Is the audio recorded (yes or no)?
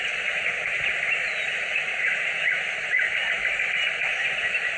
yes